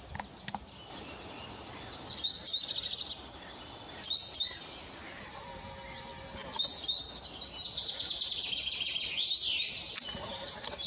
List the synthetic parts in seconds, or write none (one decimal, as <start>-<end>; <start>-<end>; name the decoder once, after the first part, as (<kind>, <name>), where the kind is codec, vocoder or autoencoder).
2.5-3.6 (vocoder, BigVGAN v2)